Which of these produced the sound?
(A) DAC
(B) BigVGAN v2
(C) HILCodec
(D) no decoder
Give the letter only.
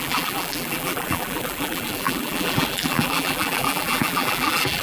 B